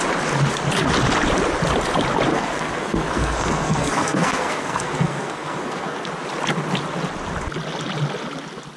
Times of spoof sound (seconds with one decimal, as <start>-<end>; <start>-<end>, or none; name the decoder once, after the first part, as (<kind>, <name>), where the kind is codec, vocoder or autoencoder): 2.3-6.1 (codec, SNAC)